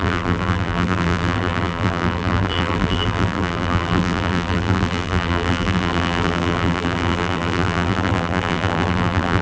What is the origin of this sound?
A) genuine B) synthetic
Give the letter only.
B